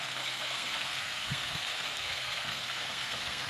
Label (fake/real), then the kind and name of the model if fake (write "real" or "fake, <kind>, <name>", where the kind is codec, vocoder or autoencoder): fake, codec, SNAC